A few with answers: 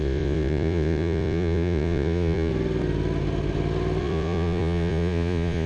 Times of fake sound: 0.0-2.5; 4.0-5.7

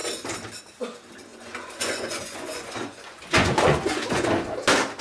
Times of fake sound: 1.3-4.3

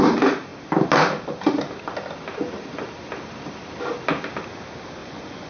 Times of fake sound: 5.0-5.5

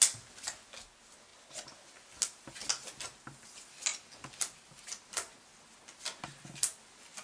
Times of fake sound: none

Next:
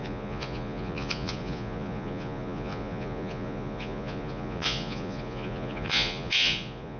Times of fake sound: 0.0-7.0

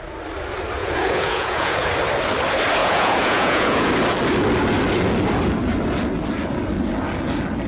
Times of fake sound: 0.8-1.9; 2.8-3.9

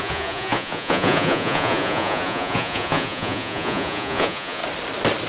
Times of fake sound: 0.0-4.6

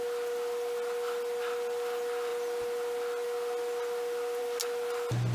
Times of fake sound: none